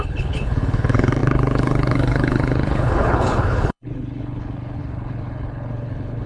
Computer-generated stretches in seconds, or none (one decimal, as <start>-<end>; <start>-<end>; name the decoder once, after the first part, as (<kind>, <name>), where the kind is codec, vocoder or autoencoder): 0.0-6.3 (codec, HILCodec)